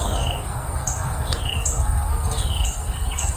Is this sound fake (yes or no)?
yes